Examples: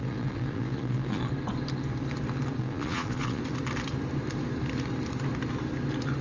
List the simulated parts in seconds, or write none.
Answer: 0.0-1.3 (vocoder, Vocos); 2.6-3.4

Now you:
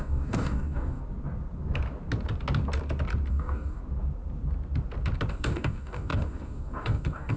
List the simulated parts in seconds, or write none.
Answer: 0.0-1.0 (codec, DAC); 3.3-3.8; 5.3-7.4

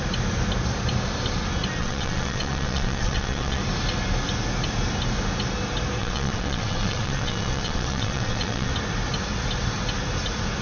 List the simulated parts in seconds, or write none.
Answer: 1.8-3.6 (vocoder, WaveNeXt); 6.0-8.7

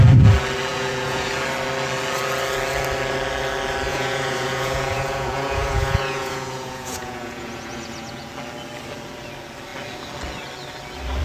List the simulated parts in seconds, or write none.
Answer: 0.7-1.3 (vocoder, Vocos); 3.9-8.3

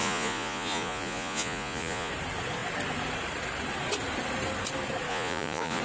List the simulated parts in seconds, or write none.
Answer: 0.0-2.1 (vocoder, Vocos); 5.1-5.8

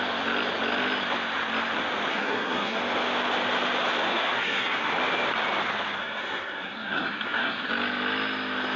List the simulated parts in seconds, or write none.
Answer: 2.1-2.8 (codec, SNAC); 4.1-4.9; 6.0-7.7

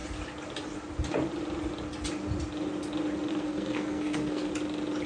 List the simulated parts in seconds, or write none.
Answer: 3.3-4.5 (codec, SNAC)